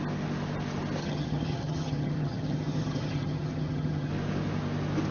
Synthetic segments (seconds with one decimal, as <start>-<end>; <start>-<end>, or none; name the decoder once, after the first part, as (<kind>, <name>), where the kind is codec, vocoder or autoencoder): 1.0-4.1 (vocoder, HiFi-GAN)